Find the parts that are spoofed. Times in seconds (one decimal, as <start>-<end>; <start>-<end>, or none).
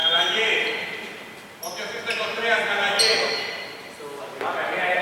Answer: none